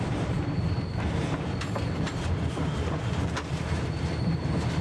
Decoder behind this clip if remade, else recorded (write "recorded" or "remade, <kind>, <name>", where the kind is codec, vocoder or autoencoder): remade, vocoder, BigVGAN v2